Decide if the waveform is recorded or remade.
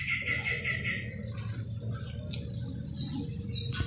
recorded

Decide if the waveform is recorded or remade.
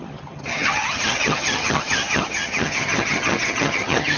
remade